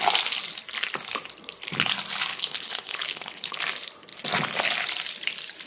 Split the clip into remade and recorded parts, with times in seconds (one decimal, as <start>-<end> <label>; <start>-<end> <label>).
0.0-2.3 recorded; 2.3-3.6 remade; 3.6-5.7 recorded